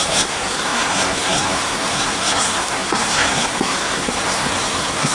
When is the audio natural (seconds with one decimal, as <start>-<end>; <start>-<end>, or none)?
none